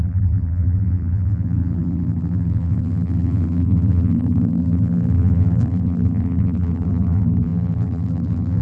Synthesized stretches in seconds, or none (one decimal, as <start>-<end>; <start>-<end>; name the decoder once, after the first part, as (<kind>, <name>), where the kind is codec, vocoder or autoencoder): 0.0-8.6 (vocoder, BigVGAN v2)